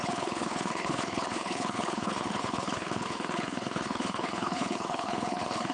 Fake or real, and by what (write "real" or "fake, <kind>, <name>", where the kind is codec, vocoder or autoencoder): fake, codec, HILCodec